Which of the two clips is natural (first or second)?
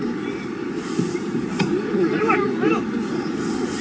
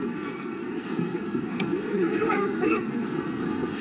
first